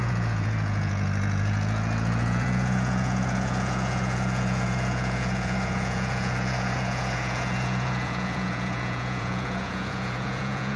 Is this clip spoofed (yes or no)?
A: yes